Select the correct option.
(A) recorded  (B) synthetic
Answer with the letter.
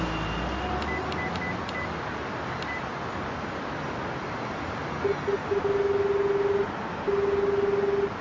A